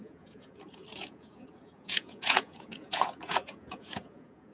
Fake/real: fake